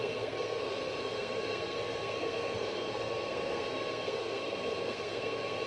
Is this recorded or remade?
remade